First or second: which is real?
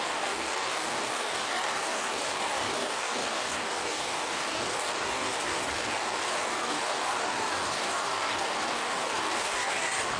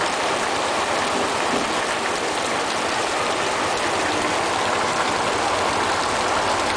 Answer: second